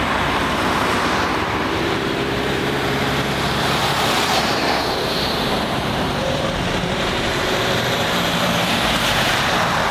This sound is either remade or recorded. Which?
remade